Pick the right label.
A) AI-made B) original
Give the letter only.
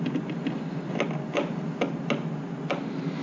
B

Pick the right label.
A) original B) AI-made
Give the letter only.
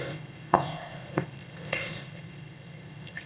B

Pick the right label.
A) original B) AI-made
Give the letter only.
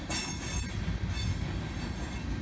A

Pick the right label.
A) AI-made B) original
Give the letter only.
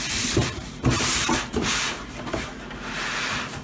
A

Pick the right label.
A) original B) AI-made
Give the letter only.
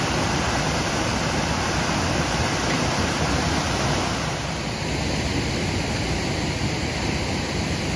A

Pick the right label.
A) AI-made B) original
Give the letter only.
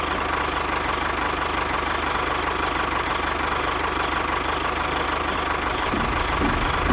B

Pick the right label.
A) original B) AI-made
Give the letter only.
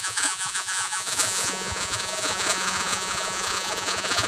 B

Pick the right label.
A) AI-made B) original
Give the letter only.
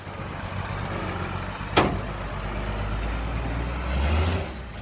B